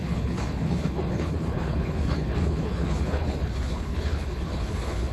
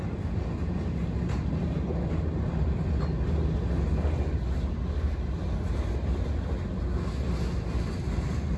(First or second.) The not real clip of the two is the first